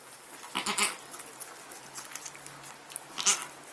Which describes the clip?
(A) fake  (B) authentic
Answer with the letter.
B